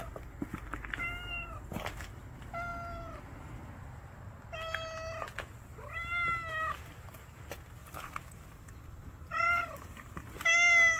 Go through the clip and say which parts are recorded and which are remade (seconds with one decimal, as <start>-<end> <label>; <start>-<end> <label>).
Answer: 0.0-7.8 recorded; 7.8-10.3 remade; 10.3-11.0 recorded